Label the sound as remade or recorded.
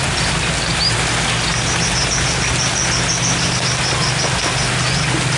recorded